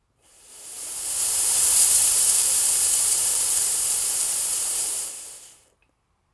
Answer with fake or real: fake